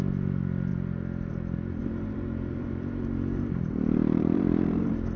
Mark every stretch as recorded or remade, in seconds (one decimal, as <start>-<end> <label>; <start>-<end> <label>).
0.0-1.8 recorded; 1.8-5.2 remade